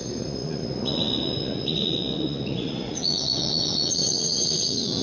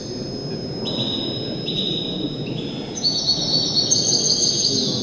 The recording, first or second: second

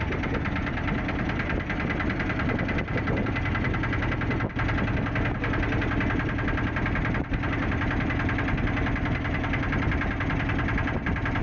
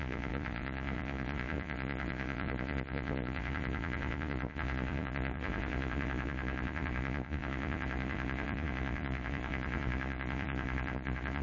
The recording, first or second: first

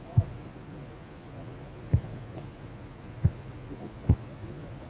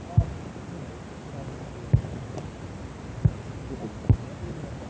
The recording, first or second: second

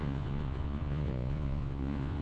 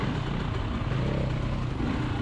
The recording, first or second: second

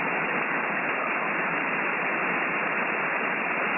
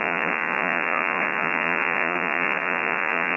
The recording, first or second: first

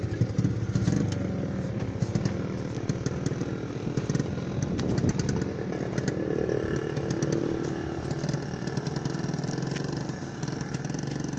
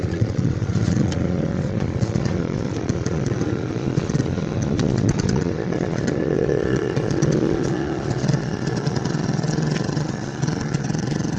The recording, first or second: first